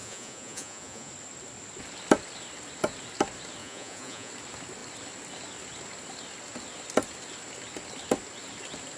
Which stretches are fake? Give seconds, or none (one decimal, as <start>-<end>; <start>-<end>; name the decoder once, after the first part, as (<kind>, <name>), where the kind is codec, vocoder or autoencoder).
0.0-1.1 (vocoder, Vocos); 3.6-4.3